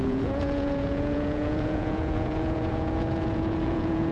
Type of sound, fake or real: fake